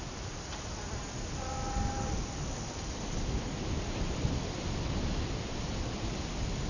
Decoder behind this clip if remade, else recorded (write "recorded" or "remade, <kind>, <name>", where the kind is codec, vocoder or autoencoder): recorded